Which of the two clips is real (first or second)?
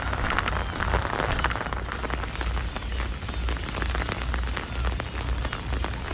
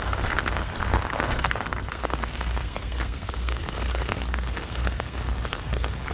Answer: first